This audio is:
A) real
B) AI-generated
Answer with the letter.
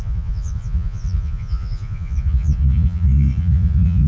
B